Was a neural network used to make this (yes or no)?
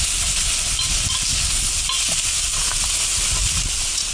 no